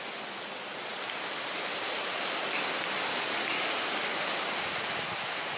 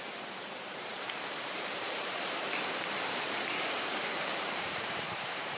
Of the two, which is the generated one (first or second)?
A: second